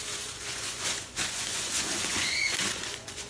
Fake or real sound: fake